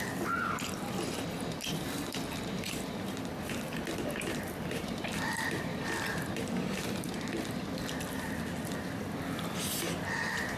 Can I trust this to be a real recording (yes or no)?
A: no